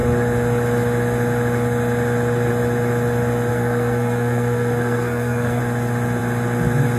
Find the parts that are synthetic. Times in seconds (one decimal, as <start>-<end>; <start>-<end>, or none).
3.5-5.6